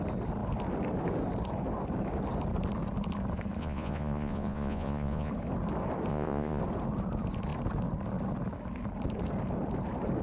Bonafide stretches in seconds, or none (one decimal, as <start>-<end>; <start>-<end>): 0.0-3.6; 5.3-6.1; 6.6-10.2